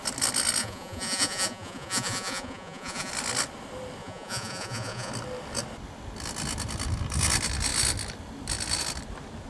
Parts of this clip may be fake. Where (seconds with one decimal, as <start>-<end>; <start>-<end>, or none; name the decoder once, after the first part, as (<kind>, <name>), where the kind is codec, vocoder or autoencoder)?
0.6-3.1 (vocoder, Vocos); 4.0-5.1